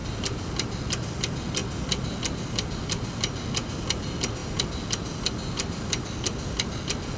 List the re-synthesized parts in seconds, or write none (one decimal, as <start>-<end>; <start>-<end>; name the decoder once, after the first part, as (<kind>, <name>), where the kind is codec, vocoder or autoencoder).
none